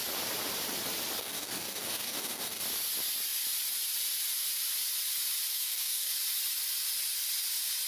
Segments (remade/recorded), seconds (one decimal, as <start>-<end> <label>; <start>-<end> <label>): 0.0-1.2 recorded; 1.2-2.6 remade; 2.6-5.5 recorded; 5.5-6.1 remade; 6.1-7.9 recorded